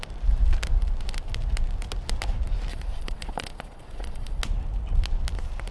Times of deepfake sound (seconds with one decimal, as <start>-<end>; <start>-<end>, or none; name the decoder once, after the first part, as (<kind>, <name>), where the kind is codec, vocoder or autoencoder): 2.7-4.4 (vocoder, Vocos)